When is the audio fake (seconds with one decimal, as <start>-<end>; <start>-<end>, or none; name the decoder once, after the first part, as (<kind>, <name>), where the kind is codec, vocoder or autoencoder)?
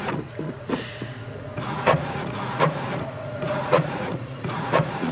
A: 0.0-5.1 (vocoder, Vocos)